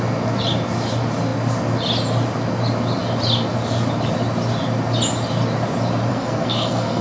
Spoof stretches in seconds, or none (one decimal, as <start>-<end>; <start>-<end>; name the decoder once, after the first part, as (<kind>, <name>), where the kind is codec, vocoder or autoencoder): 6.1-7.0 (codec, SNAC)